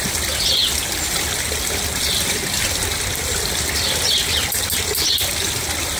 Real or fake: real